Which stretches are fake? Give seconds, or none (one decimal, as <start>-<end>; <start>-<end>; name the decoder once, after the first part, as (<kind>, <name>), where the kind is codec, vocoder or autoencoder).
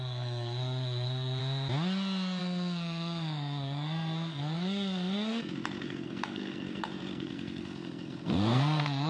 0.0-1.4 (codec, SNAC); 2.4-9.1